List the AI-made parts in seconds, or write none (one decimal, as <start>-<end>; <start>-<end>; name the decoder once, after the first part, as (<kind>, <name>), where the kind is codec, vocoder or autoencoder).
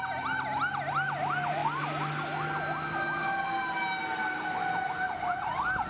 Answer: none